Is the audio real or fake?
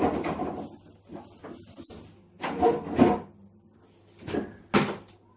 real